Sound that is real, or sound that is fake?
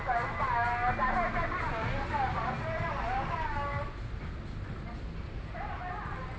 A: real